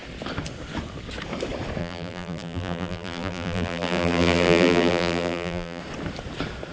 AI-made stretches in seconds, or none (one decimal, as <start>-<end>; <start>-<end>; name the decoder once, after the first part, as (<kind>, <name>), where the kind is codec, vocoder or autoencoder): 1.8-5.8 (vocoder, BigVGAN v2)